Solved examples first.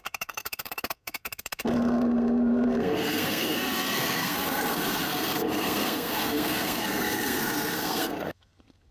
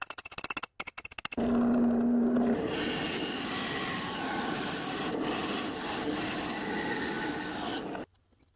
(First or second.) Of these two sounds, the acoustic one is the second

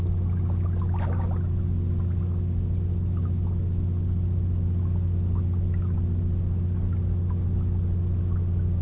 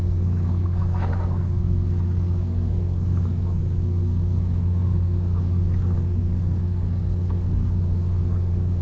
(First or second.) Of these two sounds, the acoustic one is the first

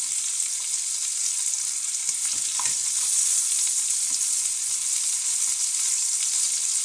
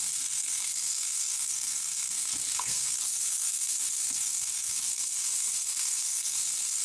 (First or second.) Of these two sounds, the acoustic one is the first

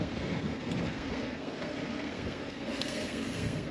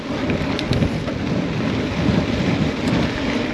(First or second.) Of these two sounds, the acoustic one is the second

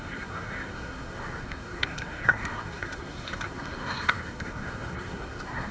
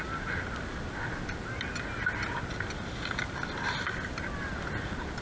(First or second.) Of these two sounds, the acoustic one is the second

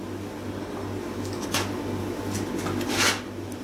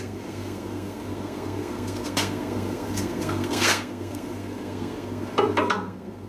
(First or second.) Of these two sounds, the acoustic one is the first